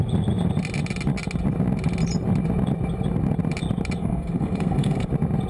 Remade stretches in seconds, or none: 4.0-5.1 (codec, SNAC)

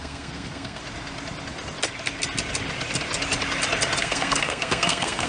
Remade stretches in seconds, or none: 0.0-0.8 (codec, SNAC); 4.0-5.3

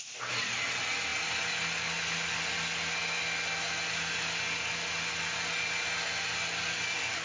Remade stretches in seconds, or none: none

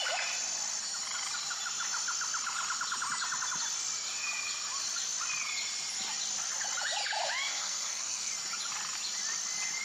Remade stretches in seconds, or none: 7.5-8.3 (codec, SNAC)